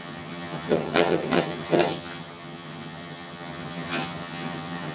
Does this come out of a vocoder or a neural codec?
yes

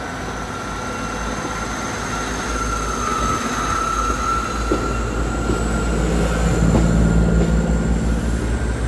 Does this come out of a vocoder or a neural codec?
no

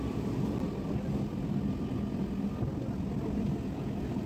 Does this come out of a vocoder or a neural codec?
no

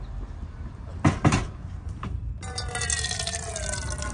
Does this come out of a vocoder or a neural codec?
no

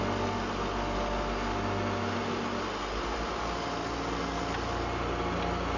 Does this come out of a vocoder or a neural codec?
no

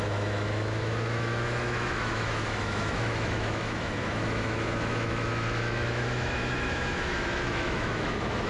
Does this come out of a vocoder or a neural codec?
yes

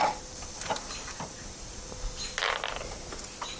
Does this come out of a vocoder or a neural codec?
no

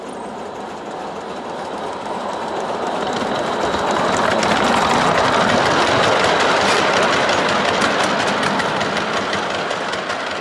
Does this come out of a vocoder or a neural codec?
no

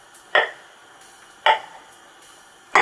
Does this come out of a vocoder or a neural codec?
no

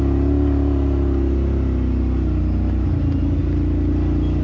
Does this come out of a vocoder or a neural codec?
no